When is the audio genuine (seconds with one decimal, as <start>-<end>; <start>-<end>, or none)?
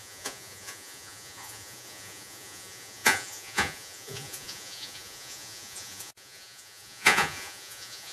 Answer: none